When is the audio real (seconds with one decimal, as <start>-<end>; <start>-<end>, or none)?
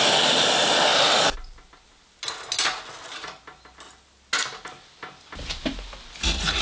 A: 0.0-6.6